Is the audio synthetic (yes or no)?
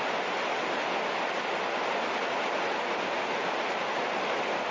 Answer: no